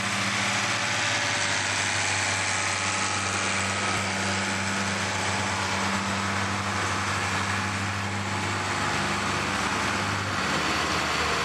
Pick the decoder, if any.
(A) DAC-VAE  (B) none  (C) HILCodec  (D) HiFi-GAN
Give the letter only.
B